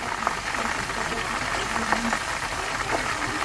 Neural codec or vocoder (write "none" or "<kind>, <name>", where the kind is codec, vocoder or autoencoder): none